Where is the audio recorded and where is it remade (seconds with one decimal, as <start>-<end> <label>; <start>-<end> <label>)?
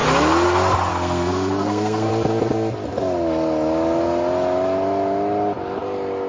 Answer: 0.0-0.9 recorded; 0.9-2.1 remade; 2.1-6.3 recorded